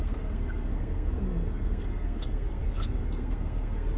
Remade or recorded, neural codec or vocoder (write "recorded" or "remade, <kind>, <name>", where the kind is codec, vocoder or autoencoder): remade, codec, SNAC